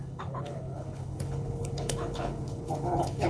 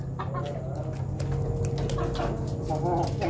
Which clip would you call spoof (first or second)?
first